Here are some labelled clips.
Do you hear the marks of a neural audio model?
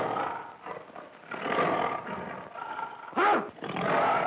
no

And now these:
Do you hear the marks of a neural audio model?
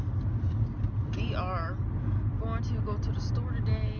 no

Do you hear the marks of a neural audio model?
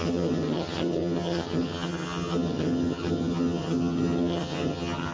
yes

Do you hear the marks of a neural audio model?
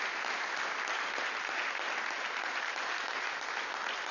no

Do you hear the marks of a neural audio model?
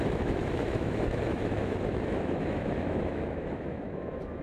yes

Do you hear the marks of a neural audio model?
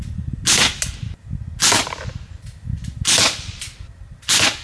no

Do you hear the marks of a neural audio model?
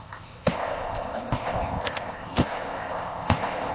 yes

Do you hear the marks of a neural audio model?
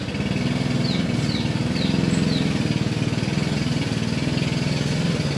no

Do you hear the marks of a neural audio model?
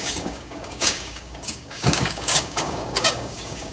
yes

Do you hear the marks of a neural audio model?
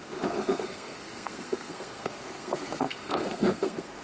yes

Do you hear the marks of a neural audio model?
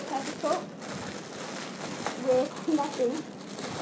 no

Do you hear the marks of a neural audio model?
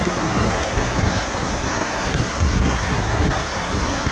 yes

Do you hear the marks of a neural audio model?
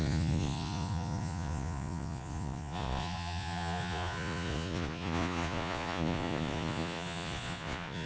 yes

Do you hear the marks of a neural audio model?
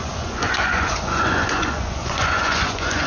yes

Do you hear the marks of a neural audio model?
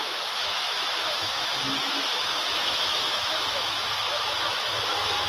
yes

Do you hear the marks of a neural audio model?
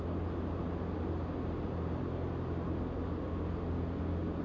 no